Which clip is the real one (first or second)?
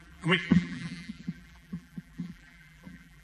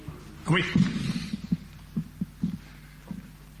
second